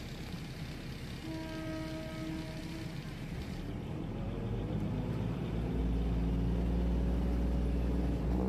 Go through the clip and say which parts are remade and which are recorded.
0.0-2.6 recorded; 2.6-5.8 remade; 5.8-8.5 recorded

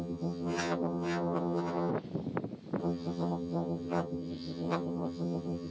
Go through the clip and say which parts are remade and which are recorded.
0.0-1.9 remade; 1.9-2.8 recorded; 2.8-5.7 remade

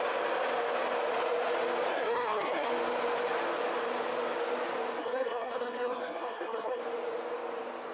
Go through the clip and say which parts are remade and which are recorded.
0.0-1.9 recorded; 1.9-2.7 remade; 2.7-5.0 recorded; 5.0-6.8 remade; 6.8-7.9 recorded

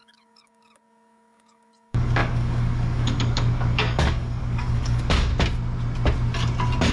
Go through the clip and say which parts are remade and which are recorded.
0.0-5.3 remade; 5.3-6.9 recorded

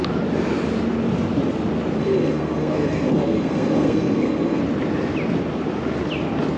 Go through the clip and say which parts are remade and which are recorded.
0.0-2.0 recorded; 2.0-4.6 remade; 4.6-6.6 recorded

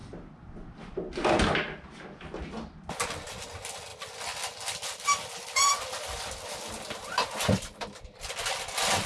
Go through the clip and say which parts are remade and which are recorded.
0.0-9.1 recorded